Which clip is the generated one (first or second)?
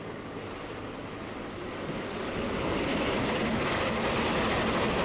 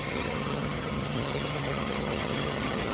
second